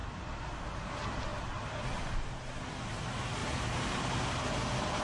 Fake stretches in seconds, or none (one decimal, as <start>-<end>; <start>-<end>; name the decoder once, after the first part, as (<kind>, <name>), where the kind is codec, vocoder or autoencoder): 0.0-0.5 (vocoder, BigVGAN v2); 3.4-4.0